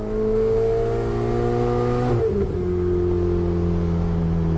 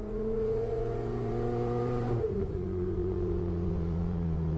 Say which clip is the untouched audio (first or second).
first